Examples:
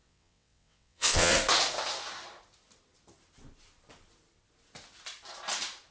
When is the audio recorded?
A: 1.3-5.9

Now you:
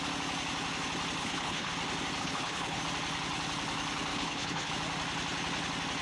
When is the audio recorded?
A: 0.0-1.2; 1.7-2.2; 2.8-4.1; 4.7-6.0

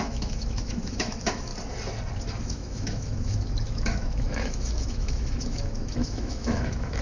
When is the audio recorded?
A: 1.5-2.4

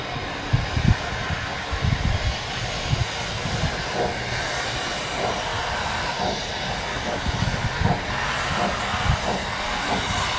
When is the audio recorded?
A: 0.0-10.4